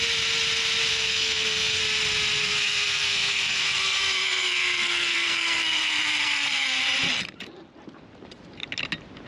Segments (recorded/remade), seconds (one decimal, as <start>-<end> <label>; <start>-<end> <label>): 0.0-0.9 recorded; 0.9-1.8 remade; 1.8-2.4 recorded; 2.4-6.8 remade; 6.8-9.3 recorded